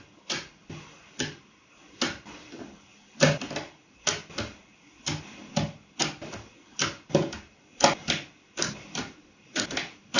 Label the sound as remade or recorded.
recorded